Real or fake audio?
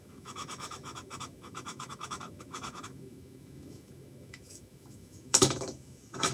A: fake